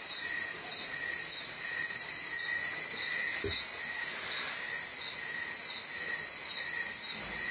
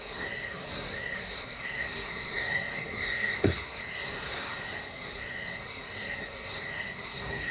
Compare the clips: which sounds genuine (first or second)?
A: first